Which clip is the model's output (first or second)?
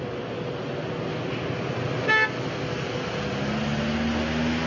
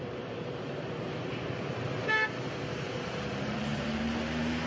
second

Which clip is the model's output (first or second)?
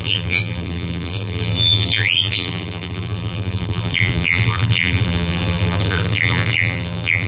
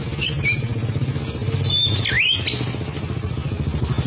first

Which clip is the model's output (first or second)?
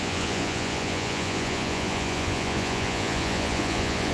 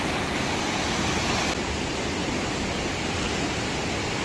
first